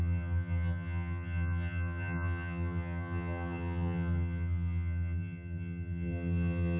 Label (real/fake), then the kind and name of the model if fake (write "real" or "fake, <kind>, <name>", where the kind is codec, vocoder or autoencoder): fake, vocoder, HiFi-GAN